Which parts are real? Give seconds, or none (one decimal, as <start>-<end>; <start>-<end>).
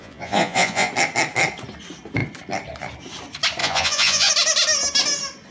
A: 0.9-3.6; 4.3-5.5